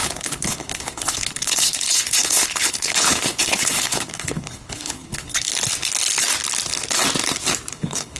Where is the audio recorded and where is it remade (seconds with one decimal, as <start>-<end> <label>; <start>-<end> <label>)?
0.0-5.5 remade; 5.5-7.7 recorded; 7.7-8.2 remade